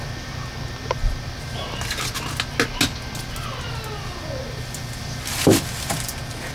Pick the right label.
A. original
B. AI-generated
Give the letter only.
A